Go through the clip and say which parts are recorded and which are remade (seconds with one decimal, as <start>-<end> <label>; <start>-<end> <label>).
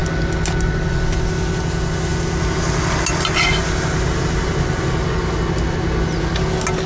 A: 0.0-6.9 recorded